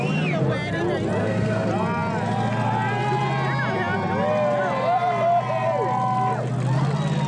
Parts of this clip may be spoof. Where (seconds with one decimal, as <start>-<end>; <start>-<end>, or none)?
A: 1.2-1.7